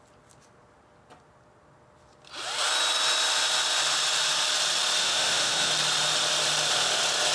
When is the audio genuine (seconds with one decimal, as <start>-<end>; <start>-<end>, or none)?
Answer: 0.0-5.0; 5.7-7.3